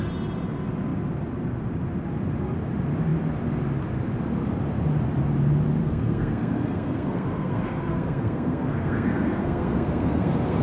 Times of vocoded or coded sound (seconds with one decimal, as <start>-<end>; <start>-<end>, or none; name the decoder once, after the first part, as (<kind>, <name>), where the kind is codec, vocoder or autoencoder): 5.8-10.6 (codec, SNAC)